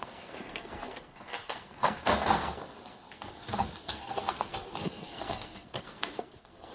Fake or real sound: fake